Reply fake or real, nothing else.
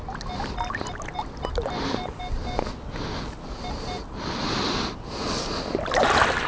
real